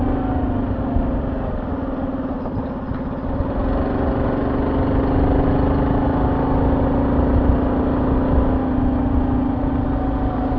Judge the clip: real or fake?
real